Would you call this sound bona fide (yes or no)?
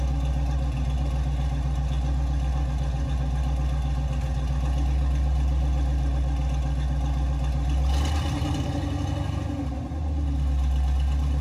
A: yes